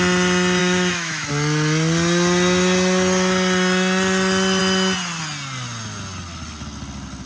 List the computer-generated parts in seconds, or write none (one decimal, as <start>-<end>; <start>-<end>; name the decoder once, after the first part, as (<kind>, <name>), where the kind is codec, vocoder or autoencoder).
0.6-1.3 (autoencoder, DAC-VAE)